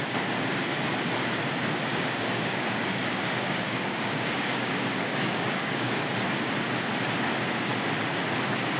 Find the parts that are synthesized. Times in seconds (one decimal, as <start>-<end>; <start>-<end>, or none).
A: 1.9-6.0